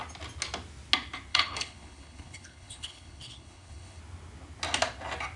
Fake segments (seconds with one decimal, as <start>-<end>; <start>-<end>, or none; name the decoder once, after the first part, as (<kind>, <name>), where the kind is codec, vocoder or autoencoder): 1.3-4.0 (codec, HILCodec)